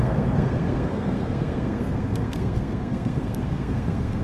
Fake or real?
fake